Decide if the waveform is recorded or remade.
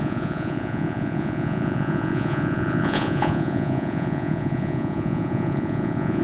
remade